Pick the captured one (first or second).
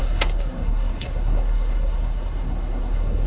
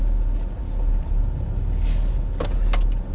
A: second